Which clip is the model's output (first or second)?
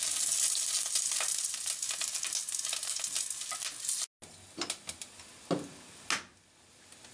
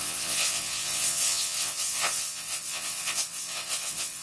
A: second